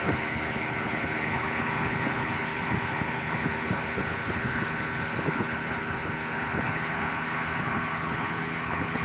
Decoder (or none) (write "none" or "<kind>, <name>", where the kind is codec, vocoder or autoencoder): codec, HILCodec